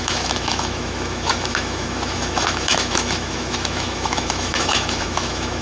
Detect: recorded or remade remade